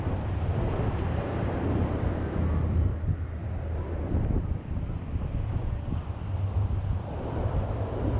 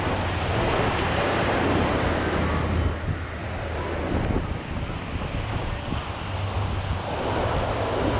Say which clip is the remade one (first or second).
first